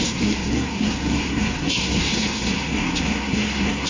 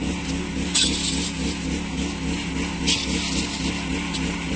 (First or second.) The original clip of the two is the second